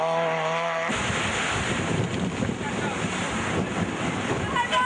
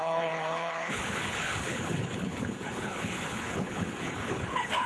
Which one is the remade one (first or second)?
second